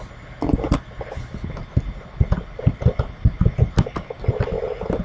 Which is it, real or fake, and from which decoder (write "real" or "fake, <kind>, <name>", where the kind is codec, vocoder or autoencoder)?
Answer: real